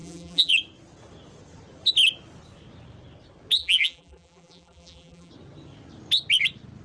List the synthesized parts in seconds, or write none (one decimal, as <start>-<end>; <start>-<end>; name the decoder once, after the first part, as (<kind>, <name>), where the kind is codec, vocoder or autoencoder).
0.0-0.5 (vocoder, BigVGAN v2); 3.6-5.3